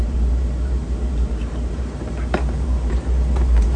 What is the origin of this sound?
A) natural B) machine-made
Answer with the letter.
B